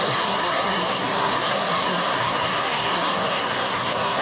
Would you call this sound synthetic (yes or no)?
yes